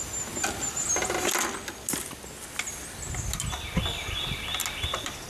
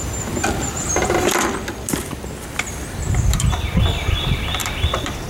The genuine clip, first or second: first